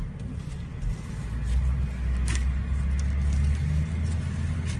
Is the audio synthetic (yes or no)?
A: no